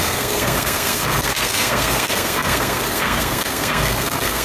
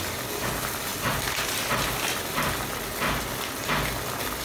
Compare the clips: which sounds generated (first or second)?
first